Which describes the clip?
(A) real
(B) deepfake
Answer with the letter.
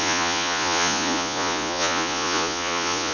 B